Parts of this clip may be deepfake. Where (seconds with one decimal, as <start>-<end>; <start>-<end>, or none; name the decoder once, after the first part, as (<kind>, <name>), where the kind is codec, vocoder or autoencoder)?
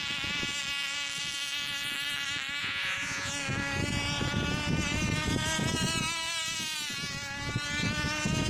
2.6-3.3 (vocoder, Vocos)